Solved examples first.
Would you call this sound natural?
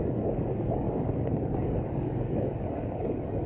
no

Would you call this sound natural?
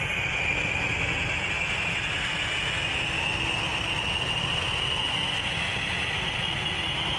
yes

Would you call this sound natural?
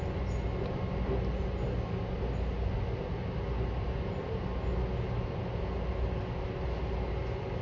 yes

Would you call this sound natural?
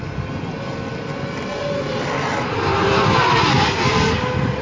yes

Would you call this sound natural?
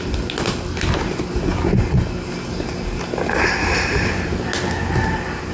yes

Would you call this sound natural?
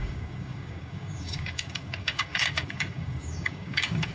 no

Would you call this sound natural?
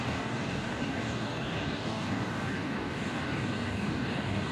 no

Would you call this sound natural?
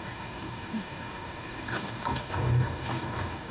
no